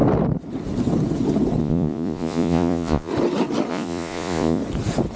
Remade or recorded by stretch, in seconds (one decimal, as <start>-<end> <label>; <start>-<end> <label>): 0.0-1.6 recorded; 1.6-3.1 remade; 3.1-3.7 recorded; 3.7-4.6 remade; 4.6-5.2 recorded